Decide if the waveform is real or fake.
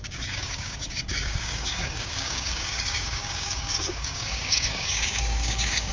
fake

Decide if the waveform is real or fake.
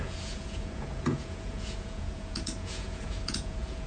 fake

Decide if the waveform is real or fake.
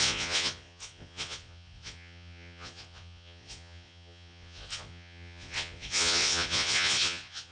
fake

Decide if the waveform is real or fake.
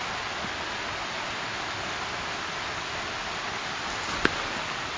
real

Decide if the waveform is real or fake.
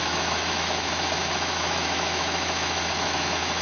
fake